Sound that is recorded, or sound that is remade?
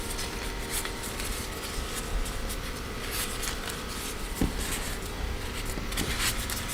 remade